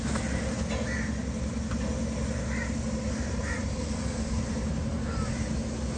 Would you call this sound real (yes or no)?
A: yes